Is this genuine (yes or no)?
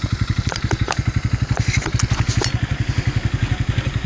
yes